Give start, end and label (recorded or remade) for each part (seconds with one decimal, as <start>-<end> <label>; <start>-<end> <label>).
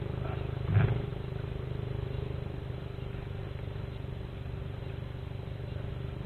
0.0-6.3 recorded